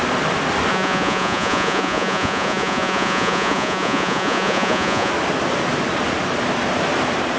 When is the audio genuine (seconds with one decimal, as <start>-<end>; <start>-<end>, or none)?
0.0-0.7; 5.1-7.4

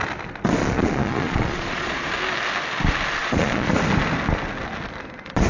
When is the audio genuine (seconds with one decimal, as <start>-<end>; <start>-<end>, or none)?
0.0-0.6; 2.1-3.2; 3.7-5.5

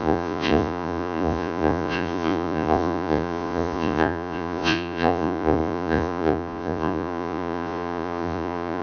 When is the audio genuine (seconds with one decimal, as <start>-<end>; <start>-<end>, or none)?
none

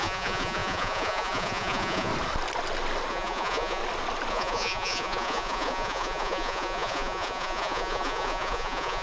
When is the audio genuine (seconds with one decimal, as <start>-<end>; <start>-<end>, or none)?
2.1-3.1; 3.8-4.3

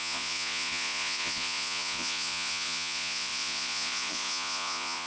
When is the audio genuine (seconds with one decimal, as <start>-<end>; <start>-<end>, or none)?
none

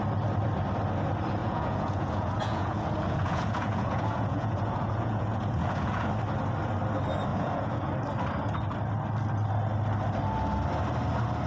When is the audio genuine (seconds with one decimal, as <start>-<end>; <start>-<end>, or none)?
0.0-1.4; 6.1-7.3; 7.9-11.5